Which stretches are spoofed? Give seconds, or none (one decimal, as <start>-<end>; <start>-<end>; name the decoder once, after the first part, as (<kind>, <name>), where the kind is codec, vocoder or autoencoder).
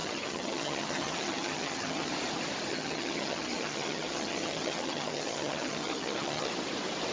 0.0-2.1 (vocoder, HiFi-GAN); 2.7-6.5